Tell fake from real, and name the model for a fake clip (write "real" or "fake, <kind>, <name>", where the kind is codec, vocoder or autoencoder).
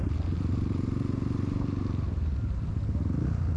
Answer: real